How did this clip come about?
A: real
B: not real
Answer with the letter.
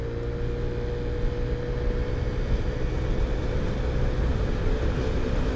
A